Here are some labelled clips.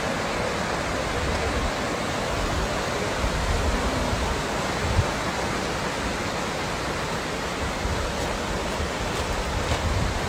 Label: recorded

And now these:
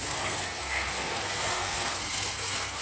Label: remade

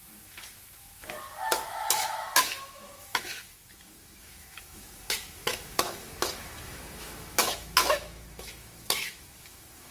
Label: remade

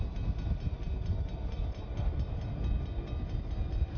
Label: recorded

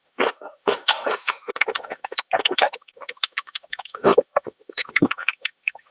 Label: remade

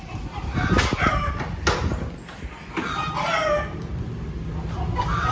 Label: recorded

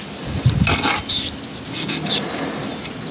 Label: recorded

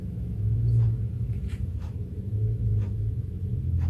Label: remade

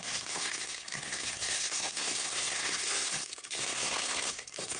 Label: remade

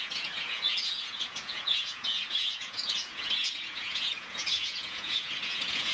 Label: remade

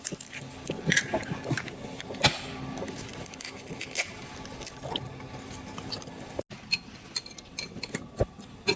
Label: recorded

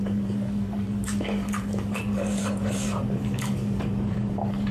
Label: remade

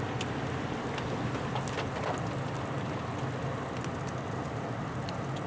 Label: recorded